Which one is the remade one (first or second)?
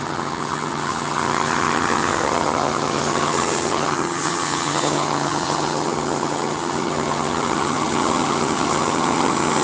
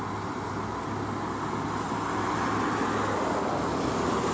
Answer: first